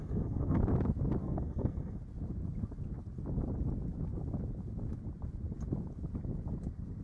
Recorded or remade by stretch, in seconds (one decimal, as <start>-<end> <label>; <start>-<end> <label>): 0.0-0.6 remade; 0.6-1.2 recorded; 1.2-2.0 remade; 2.0-7.0 recorded